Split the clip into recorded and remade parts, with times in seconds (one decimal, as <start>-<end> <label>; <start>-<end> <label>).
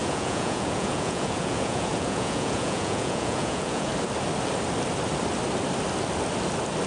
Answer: 0.0-3.9 remade; 3.9-6.9 recorded